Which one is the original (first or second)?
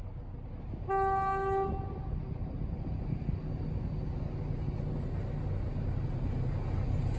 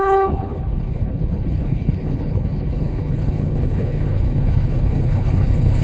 first